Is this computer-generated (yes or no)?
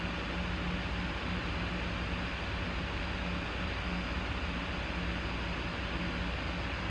no